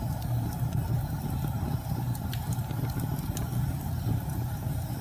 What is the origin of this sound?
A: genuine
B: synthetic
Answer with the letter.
A